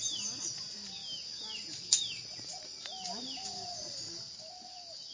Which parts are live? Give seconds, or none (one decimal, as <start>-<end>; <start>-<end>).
0.0-5.1